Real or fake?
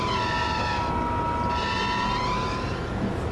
real